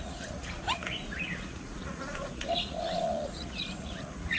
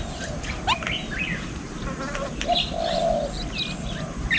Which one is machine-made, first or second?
first